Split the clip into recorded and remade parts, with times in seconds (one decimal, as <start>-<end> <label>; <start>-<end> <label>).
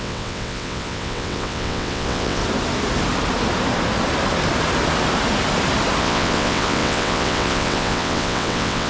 0.0-2.4 remade; 2.4-6.0 recorded; 6.0-8.9 remade